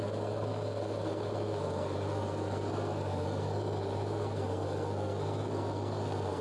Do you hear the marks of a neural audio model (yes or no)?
yes